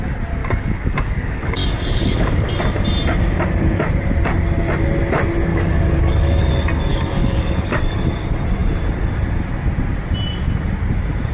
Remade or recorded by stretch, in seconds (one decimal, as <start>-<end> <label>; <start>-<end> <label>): 0.0-0.4 recorded; 0.4-2.5 remade; 2.5-5.5 recorded; 5.5-6.5 remade; 6.5-6.9 recorded; 6.9-8.0 remade; 8.0-11.3 recorded